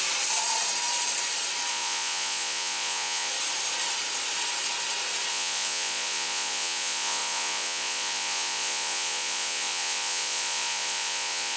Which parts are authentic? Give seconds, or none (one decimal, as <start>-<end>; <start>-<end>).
0.0-1.7; 3.3-5.3